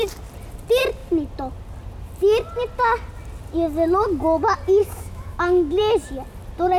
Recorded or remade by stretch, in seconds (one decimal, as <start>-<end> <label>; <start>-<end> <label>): 0.0-4.8 recorded; 4.8-5.8 remade; 5.8-6.8 recorded